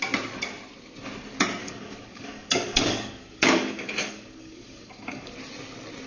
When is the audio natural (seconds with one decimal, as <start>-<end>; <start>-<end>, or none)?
0.0-1.6; 5.3-6.1